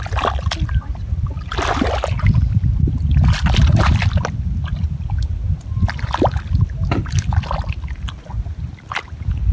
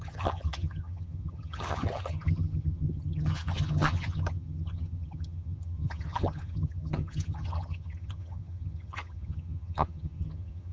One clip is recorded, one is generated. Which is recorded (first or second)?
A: first